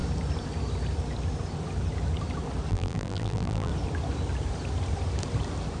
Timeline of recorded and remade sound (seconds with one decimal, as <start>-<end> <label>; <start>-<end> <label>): 0.0-2.7 recorded; 2.7-3.7 remade; 3.7-5.8 recorded